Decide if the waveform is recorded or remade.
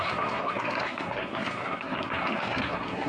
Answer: remade